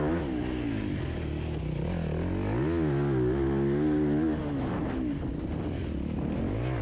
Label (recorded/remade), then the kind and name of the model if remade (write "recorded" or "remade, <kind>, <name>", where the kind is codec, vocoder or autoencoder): recorded